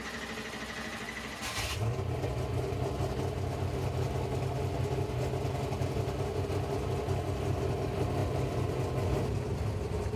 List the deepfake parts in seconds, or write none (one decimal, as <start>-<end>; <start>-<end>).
none